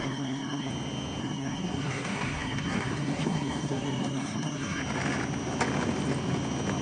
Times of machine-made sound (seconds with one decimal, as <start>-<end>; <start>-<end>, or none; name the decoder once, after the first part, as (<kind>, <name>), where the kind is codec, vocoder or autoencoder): 0.0-0.7 (codec, SNAC); 1.2-4.8